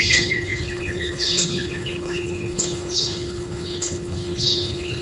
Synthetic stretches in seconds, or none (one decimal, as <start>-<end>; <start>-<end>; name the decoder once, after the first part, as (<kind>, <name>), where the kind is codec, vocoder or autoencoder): 0.0-5.0 (codec, HILCodec)